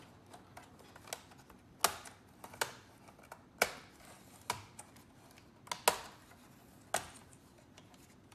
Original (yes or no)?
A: yes